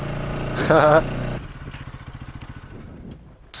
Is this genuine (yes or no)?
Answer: yes